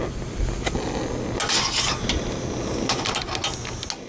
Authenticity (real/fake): real